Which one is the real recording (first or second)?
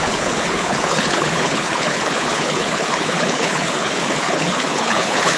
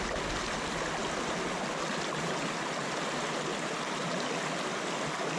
second